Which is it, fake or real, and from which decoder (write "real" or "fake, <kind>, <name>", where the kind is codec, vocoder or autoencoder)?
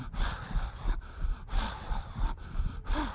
real